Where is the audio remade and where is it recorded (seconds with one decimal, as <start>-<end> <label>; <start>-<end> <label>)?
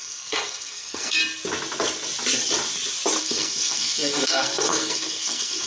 0.0-1.2 remade; 1.2-3.2 recorded; 3.2-5.7 remade